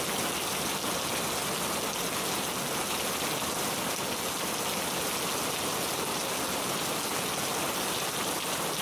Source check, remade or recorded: recorded